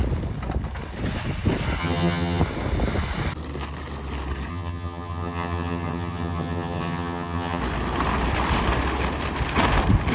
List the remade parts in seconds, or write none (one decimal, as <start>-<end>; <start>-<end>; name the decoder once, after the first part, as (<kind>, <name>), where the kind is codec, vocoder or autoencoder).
1.8-2.4 (vocoder, HiFi-GAN); 4.5-7.6